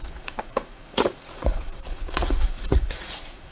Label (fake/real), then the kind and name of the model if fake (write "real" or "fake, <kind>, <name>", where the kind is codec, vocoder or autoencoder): fake, vocoder, Vocos